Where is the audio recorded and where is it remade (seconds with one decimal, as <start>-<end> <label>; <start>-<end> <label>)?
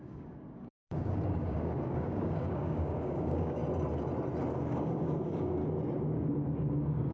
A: 0.0-3.6 remade; 3.6-4.7 recorded; 4.7-5.6 remade; 5.6-6.1 recorded; 6.1-7.1 remade